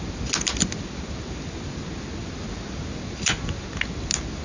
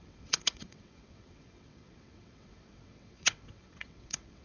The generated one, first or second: second